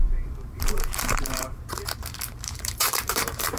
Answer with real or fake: fake